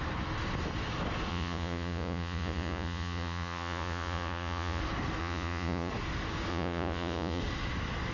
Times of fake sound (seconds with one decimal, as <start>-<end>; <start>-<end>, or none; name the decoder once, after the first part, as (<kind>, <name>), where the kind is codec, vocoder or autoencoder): 1.3-4.8 (vocoder, Vocos); 5.2-5.9; 6.5-7.4